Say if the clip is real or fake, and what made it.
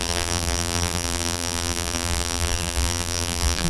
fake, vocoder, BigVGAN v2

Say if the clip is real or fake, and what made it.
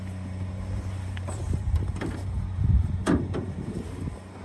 fake, vocoder, BigVGAN v2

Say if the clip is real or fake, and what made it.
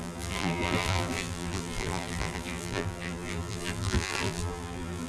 fake, vocoder, BigVGAN v2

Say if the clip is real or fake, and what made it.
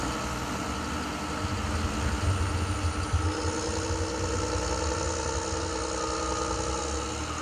real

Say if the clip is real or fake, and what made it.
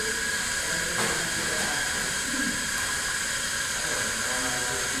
real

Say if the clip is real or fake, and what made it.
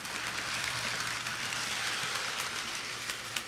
fake, vocoder, BigVGAN v2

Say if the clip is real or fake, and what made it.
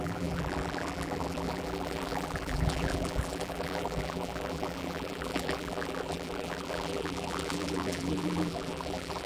fake, vocoder, BigVGAN v2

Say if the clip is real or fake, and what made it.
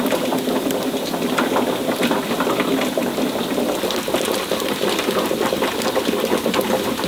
real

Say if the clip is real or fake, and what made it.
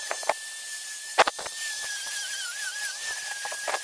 fake, vocoder, BigVGAN v2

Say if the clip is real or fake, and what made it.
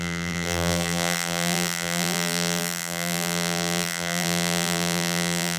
fake, vocoder, BigVGAN v2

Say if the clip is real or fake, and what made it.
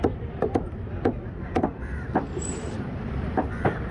fake, vocoder, BigVGAN v2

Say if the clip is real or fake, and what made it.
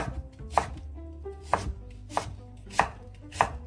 fake, vocoder, BigVGAN v2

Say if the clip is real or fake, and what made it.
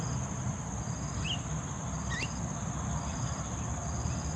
fake, vocoder, BigVGAN v2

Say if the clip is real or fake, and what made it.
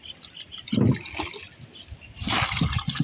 real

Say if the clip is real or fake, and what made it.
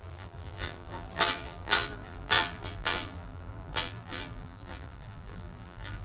fake, vocoder, BigVGAN v2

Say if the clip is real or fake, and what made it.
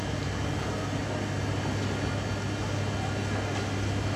real